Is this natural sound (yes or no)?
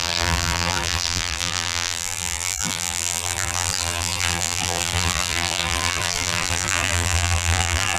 no